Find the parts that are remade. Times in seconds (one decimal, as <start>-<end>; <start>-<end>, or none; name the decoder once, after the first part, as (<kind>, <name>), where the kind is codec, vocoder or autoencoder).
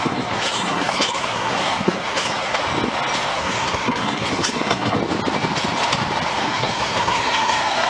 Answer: 0.0-2.6 (codec, SNAC); 3.3-5.0; 6.3-7.9